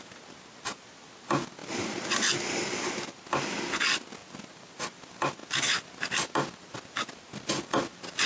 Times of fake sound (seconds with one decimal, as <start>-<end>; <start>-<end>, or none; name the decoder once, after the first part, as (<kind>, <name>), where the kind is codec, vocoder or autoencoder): none